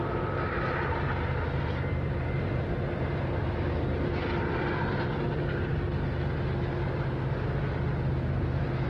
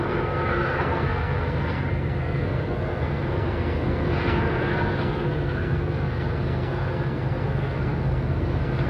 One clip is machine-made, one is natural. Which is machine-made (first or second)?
second